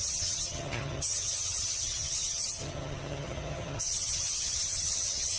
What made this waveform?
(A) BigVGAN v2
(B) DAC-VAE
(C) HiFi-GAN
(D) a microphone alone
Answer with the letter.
C